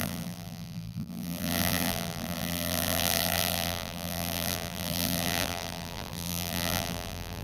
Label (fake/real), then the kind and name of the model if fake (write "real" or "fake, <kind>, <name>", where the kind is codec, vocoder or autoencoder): fake, vocoder, BigVGAN v2